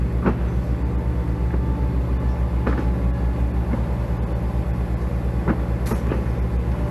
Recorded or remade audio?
recorded